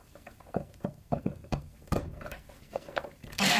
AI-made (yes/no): yes